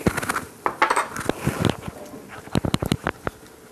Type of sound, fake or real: real